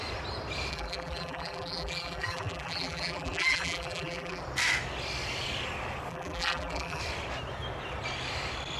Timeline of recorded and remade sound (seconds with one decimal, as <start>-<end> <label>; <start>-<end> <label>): 0.0-0.7 recorded; 0.7-4.4 remade; 4.4-6.1 recorded; 6.1-7.0 remade; 7.0-8.8 recorded